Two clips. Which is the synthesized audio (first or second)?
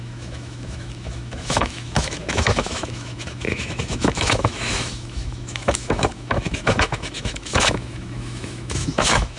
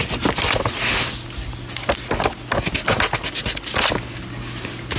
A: first